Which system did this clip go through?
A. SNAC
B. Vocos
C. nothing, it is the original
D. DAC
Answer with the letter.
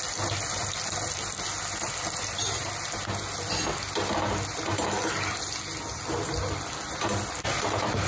C